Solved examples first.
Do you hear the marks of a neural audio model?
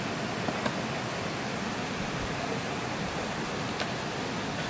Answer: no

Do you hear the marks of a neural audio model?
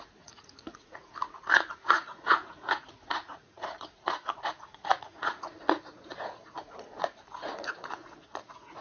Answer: yes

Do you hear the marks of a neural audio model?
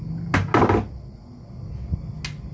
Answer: no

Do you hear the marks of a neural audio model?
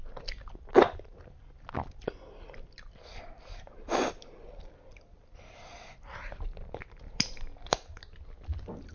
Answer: no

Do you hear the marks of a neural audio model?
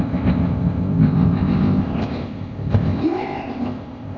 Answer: yes